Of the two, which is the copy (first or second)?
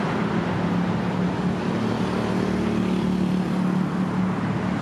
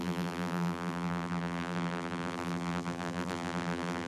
second